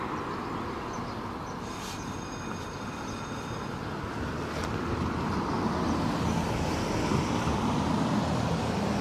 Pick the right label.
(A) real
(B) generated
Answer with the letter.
A